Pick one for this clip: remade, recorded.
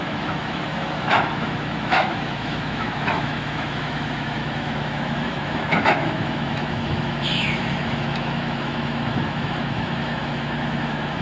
remade